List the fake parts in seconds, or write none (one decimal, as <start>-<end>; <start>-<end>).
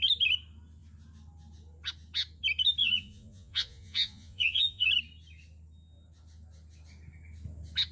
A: 2.8-4.9